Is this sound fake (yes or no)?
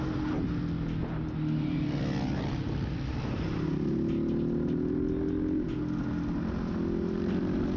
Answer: no